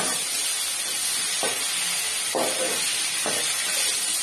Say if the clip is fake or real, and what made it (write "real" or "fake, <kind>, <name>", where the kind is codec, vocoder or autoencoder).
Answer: real